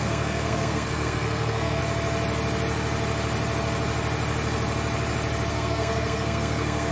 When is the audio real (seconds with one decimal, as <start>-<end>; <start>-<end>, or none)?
1.8-5.5

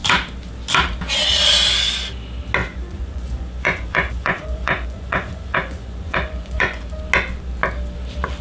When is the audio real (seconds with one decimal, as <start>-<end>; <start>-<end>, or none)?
0.0-2.6; 6.8-8.4